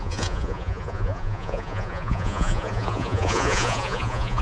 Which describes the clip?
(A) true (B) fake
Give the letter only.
B